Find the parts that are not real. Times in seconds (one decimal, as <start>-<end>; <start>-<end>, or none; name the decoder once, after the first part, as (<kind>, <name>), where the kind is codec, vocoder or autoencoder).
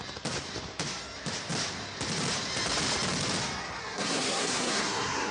3.8-5.3 (codec, SNAC)